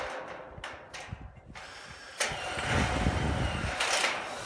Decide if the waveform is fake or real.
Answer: real